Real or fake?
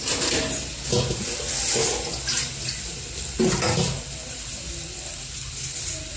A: real